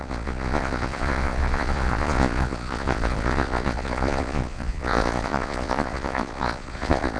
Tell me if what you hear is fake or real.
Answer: fake